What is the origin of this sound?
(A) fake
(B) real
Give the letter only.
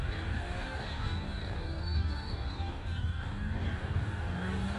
A